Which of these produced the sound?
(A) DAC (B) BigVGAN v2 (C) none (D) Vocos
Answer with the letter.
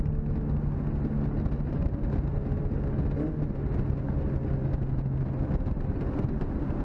C